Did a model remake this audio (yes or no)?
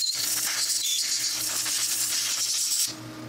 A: no